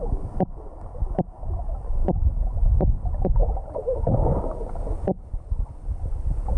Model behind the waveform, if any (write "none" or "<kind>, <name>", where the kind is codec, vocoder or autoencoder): none